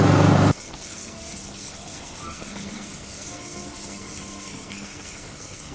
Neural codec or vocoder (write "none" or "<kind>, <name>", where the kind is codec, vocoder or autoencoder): codec, SNAC